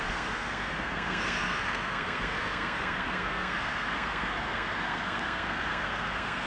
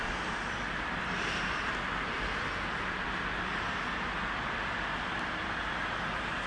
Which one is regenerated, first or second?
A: first